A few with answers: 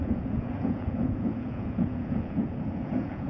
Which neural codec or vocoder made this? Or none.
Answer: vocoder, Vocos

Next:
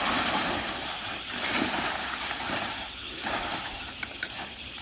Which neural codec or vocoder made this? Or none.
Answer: vocoder, BigVGAN v2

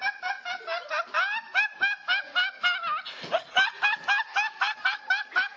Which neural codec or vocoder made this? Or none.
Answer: none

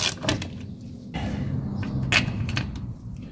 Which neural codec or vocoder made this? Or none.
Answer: none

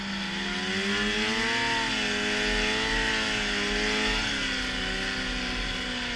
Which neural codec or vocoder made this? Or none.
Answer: none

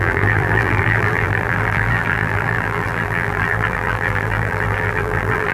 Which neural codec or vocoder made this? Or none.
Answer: vocoder, BigVGAN v2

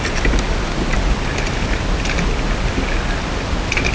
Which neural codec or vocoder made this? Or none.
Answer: none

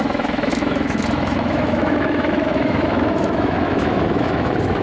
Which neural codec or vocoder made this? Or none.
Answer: autoencoder, DAC-VAE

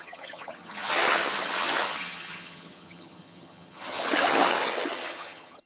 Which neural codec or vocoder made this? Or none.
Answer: vocoder, HiFi-GAN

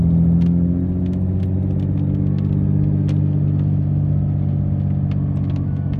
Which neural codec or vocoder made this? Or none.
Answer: none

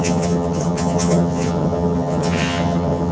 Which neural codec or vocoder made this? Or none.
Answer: vocoder, HiFi-GAN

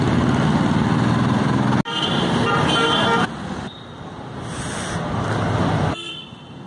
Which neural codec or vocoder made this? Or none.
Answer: none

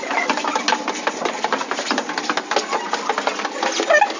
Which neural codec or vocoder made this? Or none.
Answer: none